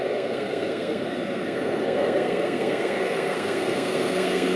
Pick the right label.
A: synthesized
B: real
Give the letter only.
A